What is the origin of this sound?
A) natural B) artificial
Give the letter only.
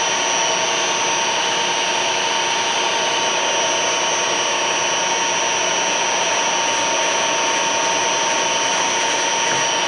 A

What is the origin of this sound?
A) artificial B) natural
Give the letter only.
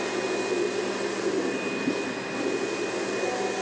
B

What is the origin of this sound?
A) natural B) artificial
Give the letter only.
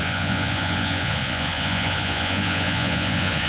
B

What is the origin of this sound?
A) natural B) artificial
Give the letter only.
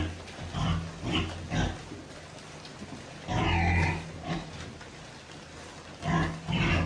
A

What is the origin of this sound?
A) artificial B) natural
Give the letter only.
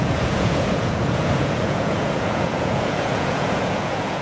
A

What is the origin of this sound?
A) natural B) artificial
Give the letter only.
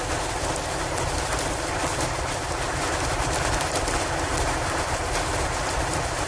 A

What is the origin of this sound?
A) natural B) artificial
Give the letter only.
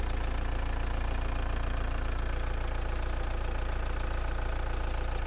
A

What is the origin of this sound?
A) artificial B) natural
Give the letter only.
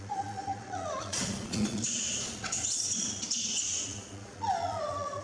A